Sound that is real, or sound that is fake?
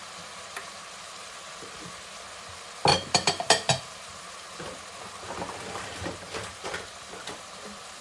fake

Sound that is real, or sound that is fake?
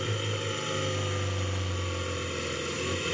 real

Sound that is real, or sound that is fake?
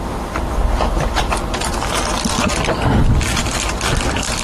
fake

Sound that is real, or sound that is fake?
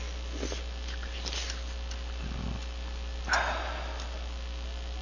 real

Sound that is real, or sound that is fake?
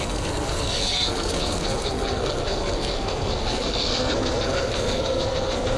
fake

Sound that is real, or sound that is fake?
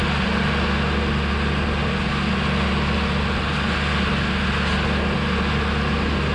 real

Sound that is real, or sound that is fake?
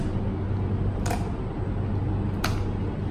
real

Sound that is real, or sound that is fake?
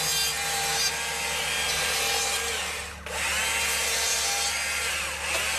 real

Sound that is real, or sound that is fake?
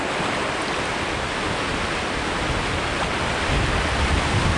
real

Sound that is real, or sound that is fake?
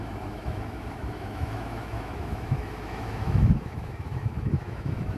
fake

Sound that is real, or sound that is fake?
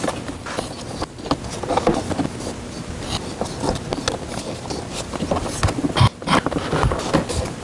real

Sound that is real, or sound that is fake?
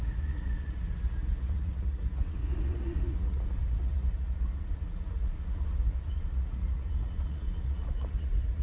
fake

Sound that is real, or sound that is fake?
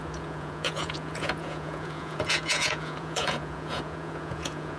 fake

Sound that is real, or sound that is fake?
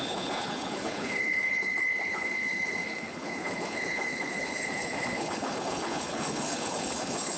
fake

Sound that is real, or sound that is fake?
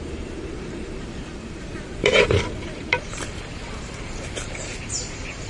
fake